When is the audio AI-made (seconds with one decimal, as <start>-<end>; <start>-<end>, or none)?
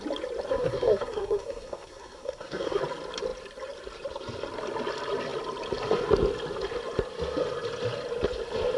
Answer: 0.5-2.8